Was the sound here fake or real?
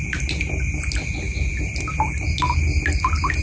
real